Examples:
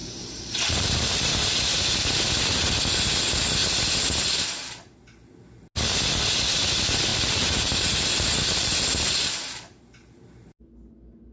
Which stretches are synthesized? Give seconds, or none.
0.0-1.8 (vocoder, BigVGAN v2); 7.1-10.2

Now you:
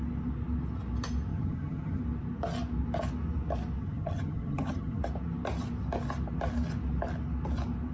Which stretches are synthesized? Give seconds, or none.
1.3-2.0 (vocoder, HiFi-GAN); 3.8-5.0